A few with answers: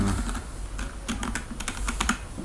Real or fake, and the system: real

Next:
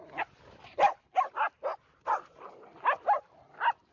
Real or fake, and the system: real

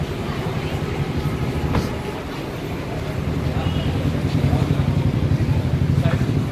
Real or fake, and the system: fake, vocoder, BigVGAN v2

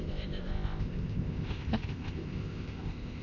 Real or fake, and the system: fake, codec, ZipCodec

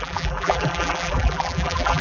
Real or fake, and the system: fake, vocoder, BigVGAN v2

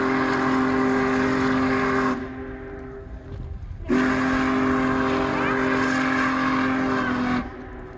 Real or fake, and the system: real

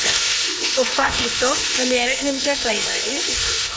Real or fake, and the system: fake, codec, ZipCodec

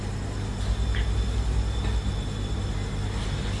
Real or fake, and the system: real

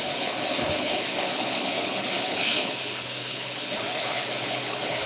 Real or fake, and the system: fake, codec, HILCodec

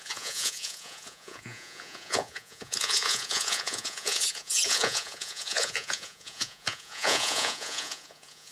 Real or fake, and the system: fake, vocoder, Vocos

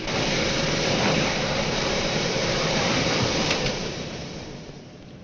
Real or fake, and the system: fake, vocoder, BigVGAN v2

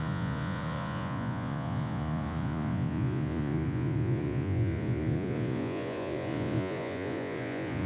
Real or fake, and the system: fake, vocoder, Vocos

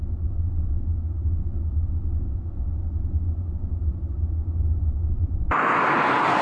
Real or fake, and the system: real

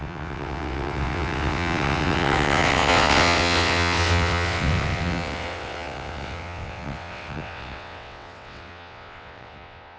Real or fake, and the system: fake, vocoder, WaveNeXt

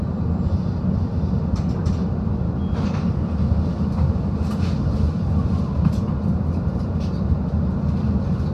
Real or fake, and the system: real